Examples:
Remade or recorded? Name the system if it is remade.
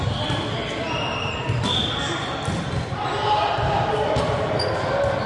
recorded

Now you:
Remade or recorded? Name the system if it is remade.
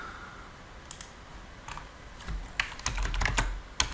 recorded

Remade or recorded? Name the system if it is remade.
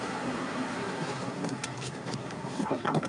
remade, codec, SNAC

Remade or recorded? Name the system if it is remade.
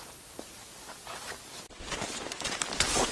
recorded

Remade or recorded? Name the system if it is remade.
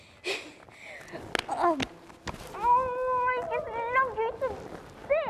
recorded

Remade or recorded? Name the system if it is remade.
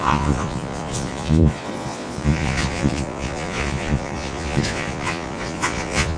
remade, vocoder, Vocos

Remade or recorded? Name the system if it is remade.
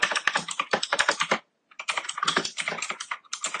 recorded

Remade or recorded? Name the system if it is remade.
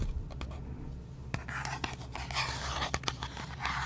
recorded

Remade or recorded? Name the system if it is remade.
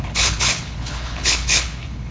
remade, codec, HILCodec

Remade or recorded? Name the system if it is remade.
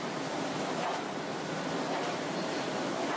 remade, vocoder, BigVGAN v2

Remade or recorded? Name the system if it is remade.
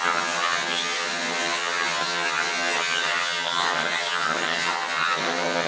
remade, vocoder, HiFi-GAN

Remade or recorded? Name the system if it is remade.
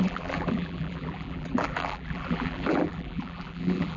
remade, vocoder, BigVGAN v2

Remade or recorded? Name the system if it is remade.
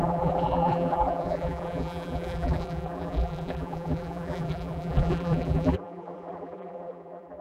remade, vocoder, BigVGAN v2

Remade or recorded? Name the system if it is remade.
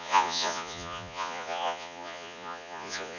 remade, vocoder, Vocos